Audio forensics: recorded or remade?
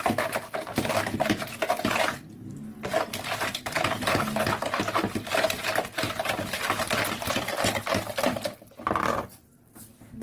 recorded